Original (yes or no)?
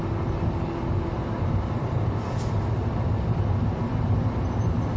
yes